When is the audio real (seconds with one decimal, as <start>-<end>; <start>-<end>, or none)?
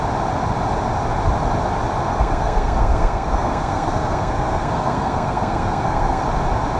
0.0-2.1; 6.2-6.8